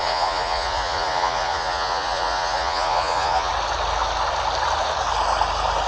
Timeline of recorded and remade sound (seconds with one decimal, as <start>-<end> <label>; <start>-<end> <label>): 0.0-3.5 remade; 3.5-5.9 recorded